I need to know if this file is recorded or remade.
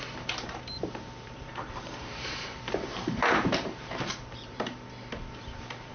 remade